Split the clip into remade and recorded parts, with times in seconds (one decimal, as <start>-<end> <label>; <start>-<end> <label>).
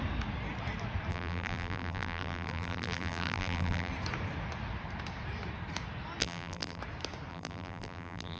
0.0-1.1 recorded; 1.1-3.9 remade; 3.9-6.2 recorded; 6.2-6.8 remade; 6.8-7.3 recorded; 7.3-8.4 remade